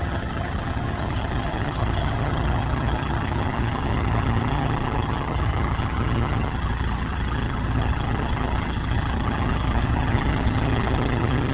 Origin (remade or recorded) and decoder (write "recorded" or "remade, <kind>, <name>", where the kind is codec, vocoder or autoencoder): remade, vocoder, HiFi-GAN